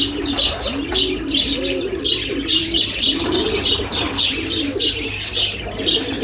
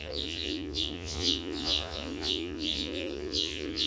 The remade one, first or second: second